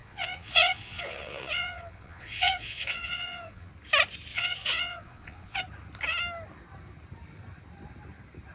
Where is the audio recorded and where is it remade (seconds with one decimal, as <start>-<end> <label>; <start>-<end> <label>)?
0.0-3.7 remade; 3.7-4.3 recorded; 4.3-5.6 remade; 5.6-8.5 recorded